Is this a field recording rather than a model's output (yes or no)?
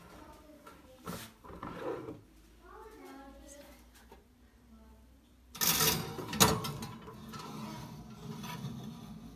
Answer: yes